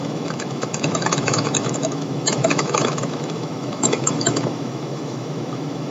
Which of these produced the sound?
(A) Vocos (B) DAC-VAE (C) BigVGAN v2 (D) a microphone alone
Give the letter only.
B